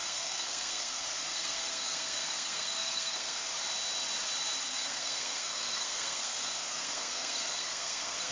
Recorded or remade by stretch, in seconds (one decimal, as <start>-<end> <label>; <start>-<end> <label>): 0.0-3.5 remade; 3.5-4.7 recorded; 4.7-8.3 remade